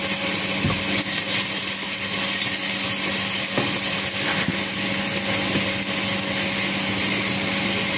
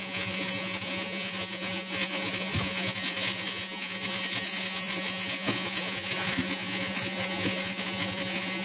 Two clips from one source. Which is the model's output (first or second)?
second